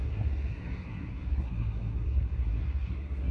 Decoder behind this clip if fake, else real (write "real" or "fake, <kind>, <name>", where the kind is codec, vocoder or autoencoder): fake, codec, SNAC